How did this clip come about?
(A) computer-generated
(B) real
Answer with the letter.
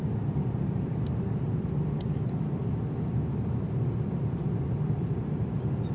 B